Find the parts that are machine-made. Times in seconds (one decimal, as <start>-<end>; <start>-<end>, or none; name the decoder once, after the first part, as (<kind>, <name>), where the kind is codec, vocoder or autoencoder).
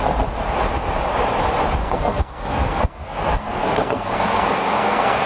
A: 1.8-5.3 (codec, SNAC)